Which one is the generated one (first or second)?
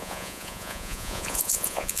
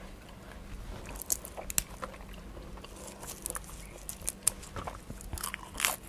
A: first